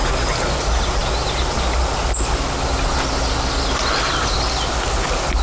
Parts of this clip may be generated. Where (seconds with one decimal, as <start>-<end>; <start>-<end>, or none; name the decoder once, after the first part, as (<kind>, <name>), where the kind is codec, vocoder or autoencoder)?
none